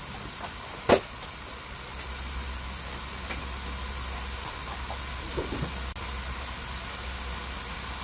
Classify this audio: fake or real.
real